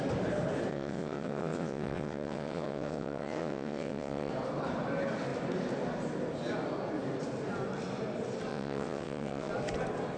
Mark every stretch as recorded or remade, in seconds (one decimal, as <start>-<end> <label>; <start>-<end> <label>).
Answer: 0.0-0.7 recorded; 0.7-4.3 remade; 4.3-8.5 recorded; 8.5-9.5 remade; 9.5-10.2 recorded